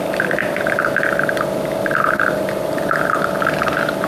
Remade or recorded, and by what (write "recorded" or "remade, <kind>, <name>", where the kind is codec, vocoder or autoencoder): recorded